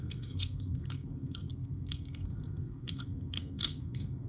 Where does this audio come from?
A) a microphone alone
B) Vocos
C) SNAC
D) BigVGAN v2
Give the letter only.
C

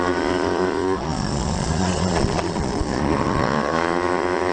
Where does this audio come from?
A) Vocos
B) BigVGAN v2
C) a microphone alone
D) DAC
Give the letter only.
A